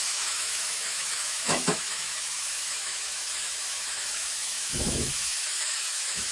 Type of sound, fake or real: fake